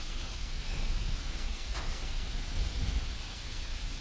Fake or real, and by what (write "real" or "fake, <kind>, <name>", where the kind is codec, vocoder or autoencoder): fake, codec, SNAC